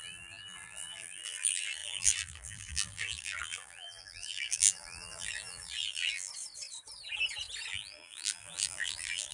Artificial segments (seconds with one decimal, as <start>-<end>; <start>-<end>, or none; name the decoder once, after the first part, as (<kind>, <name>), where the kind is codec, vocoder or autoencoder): 0.0-6.3 (vocoder, BigVGAN v2); 7.7-9.3